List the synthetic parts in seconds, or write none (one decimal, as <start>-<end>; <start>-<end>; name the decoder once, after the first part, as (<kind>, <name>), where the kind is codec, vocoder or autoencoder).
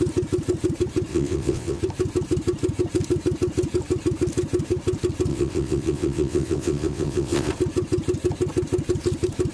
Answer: 1.1-1.8 (vocoder, WaveNeXt); 5.3-7.5